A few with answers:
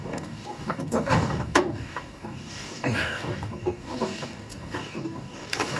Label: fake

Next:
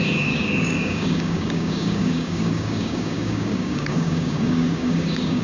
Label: fake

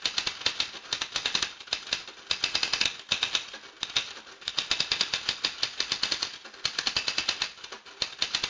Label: real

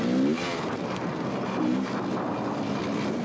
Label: real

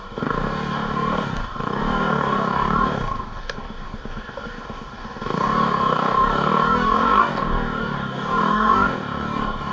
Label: fake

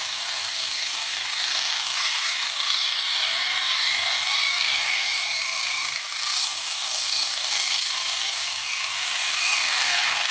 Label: fake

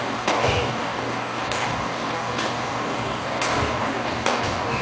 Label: fake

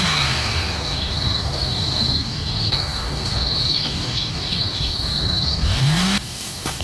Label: fake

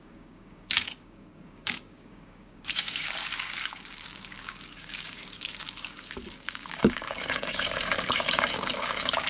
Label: fake